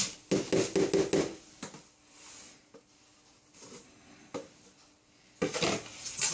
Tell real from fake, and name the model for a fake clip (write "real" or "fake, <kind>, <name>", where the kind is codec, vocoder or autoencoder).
real